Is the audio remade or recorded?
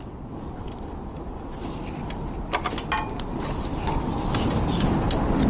recorded